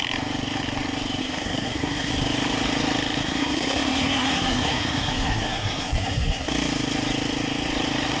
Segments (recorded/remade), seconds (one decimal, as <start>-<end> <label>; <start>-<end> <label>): 0.0-1.2 recorded; 1.2-2.1 remade; 2.1-3.2 recorded; 3.2-6.5 remade; 6.5-8.2 recorded